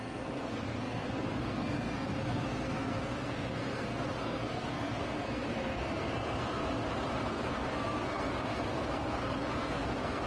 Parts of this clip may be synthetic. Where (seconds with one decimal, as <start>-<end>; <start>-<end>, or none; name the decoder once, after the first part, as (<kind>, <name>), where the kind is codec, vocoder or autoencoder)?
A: 0.0-6.6 (codec, SNAC); 7.3-10.3